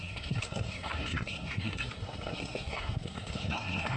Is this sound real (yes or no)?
no